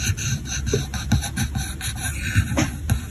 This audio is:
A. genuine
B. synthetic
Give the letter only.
A